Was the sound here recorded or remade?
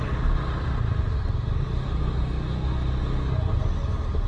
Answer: recorded